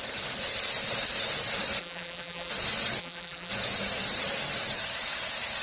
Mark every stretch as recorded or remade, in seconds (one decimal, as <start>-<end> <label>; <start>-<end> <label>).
0.0-1.8 recorded; 1.8-2.5 remade; 2.5-3.0 recorded; 3.0-3.5 remade; 3.5-5.6 recorded